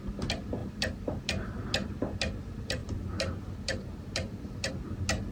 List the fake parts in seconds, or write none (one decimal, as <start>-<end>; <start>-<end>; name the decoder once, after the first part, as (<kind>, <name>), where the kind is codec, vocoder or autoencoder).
0.6-1.5 (vocoder, BigVGAN v2); 2.8-4.7